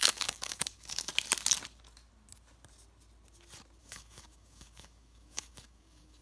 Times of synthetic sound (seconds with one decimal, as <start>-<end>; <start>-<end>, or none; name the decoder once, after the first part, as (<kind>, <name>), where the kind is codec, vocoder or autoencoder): 0.0-1.1 (codec, DAC); 3.8-6.2